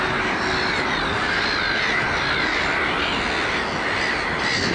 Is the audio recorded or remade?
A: recorded